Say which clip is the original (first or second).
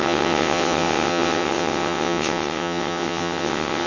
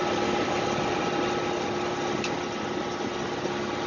second